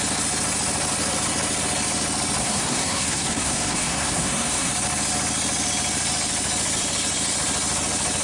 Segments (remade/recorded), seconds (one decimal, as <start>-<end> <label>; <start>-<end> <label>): 0.0-2.4 recorded; 2.4-4.7 remade; 4.7-8.2 recorded